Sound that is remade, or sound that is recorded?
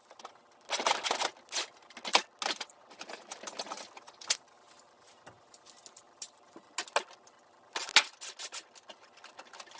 recorded